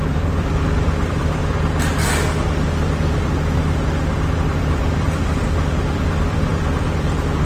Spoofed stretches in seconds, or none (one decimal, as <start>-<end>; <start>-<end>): 0.0-1.4; 4.4-7.5

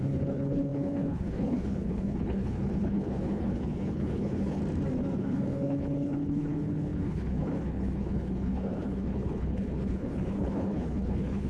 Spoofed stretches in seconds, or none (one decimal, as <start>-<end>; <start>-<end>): 0.0-4.6; 5.2-11.5